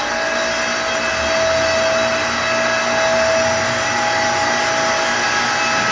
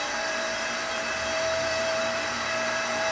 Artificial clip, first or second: second